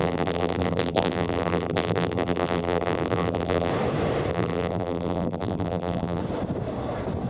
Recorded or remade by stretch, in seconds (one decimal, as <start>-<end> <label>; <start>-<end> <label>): 0.0-3.7 remade; 3.7-4.3 recorded; 4.3-6.2 remade; 6.2-7.3 recorded